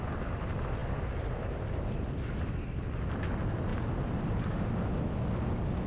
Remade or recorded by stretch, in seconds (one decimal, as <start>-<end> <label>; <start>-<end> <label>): 0.0-5.9 recorded